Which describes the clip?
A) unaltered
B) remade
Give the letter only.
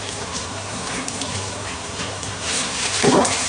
B